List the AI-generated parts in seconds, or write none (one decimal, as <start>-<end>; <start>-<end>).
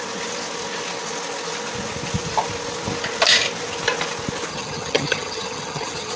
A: 4.5-6.2